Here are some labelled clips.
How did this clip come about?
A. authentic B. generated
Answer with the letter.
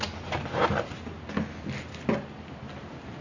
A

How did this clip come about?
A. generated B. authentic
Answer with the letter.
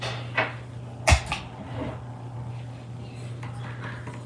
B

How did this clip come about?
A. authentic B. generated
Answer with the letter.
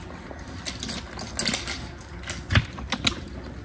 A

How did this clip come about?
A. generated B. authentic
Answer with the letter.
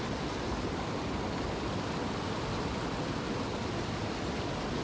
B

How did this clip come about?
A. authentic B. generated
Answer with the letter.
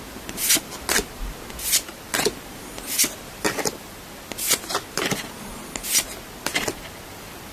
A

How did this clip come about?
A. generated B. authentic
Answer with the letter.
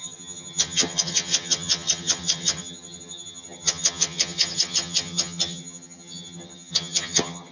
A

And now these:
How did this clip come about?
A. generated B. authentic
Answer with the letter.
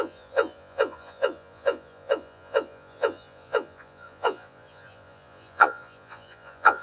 A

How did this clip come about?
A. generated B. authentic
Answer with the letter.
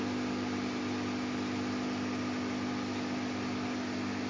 B